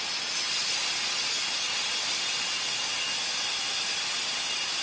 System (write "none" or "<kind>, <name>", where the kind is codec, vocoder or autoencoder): none